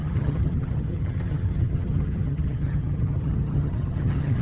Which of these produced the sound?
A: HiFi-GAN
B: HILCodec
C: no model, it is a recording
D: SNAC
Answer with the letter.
A